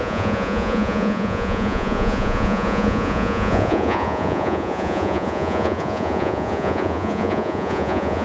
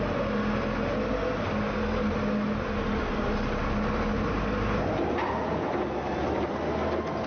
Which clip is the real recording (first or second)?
second